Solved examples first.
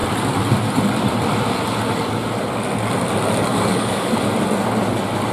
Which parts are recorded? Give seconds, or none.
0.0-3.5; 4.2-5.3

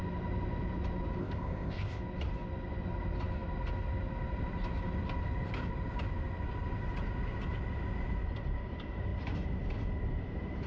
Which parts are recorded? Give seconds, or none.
0.0-1.2; 2.0-10.7

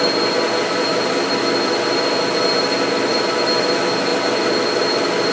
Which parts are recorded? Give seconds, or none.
0.0-5.3

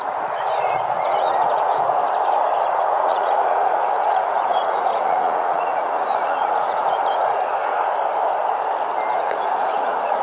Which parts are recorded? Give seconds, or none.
2.0-2.7; 7.9-9.1

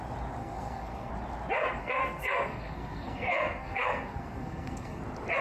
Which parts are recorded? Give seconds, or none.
0.0-0.4; 1.1-1.8; 5.0-5.4